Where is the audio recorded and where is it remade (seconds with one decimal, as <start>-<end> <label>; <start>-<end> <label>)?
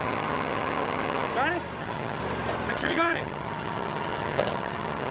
0.0-1.3 remade; 1.3-1.8 recorded; 1.8-2.2 remade; 2.2-2.7 recorded; 2.7-5.1 remade